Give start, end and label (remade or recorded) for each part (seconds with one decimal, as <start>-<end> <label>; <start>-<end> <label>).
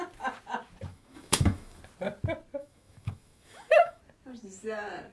0.0-0.9 recorded; 0.9-1.8 remade; 1.8-2.6 recorded; 2.6-4.0 remade; 4.0-5.1 recorded